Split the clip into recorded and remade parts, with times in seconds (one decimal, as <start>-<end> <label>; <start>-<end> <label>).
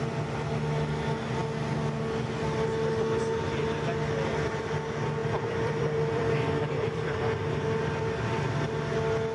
0.0-5.2 recorded; 5.2-7.2 remade; 7.2-9.3 recorded